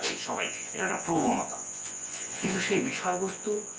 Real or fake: fake